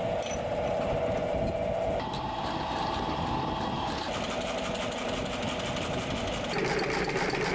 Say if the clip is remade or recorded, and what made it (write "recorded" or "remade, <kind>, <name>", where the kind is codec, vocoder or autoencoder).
recorded